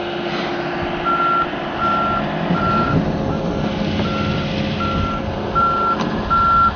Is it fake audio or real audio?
real